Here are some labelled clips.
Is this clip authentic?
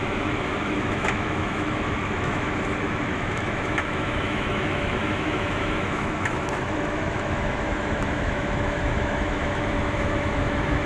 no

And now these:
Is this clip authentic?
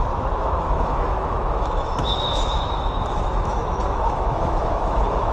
no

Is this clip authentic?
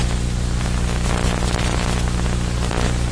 yes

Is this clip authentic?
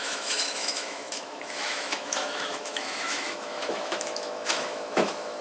no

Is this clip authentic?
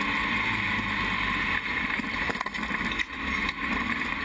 yes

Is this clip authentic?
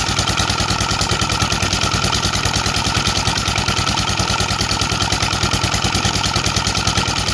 yes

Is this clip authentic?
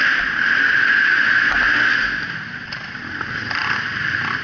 yes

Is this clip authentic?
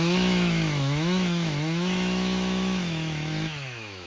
no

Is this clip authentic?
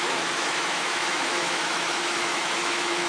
no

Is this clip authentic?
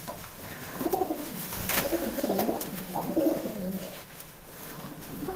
no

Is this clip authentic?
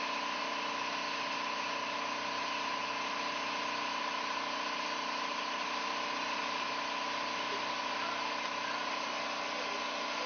yes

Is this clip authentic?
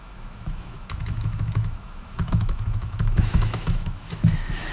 no